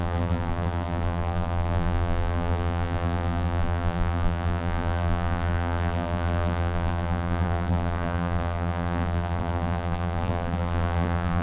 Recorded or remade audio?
remade